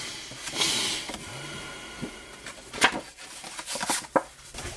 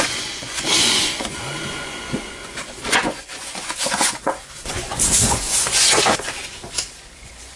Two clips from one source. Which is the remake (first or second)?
second